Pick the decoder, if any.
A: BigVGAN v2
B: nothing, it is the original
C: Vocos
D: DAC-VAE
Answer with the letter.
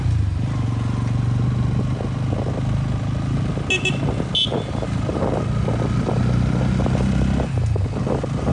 B